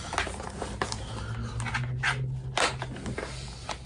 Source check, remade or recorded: recorded